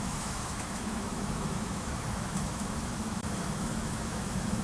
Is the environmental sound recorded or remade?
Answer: remade